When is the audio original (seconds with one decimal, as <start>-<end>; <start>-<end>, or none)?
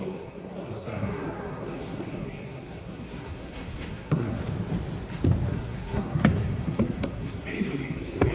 4.4-5.5